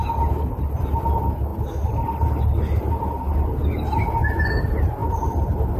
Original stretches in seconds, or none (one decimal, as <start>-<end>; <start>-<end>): 0.0-5.8